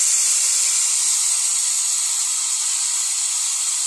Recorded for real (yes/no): yes